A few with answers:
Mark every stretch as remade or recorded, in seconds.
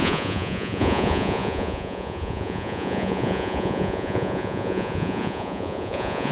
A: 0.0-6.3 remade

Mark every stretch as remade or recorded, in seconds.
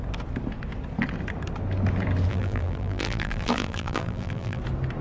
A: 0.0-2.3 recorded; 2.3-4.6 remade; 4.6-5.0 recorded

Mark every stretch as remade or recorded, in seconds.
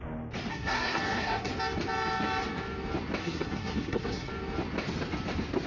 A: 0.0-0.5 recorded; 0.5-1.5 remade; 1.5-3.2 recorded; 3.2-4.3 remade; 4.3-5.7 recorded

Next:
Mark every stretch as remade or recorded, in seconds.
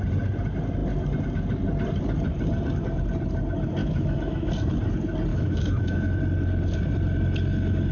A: 0.0-3.8 recorded; 3.8-4.5 remade; 4.5-5.3 recorded; 5.3-6.2 remade; 6.2-7.9 recorded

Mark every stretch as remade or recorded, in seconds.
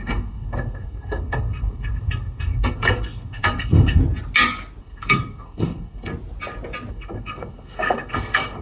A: 0.0-4.0 remade; 4.0-4.8 recorded; 4.8-6.1 remade; 6.1-6.9 recorded; 6.9-8.6 remade